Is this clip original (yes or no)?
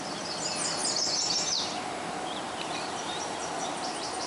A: no